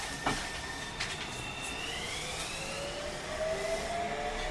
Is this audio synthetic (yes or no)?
no